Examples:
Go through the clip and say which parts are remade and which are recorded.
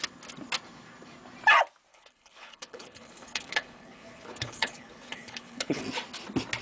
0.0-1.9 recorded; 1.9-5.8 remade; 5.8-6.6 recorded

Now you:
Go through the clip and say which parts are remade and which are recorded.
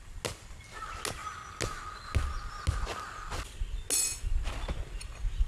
0.0-5.5 recorded